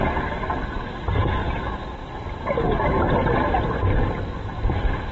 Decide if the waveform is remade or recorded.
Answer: recorded